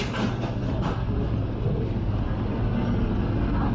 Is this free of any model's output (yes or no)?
yes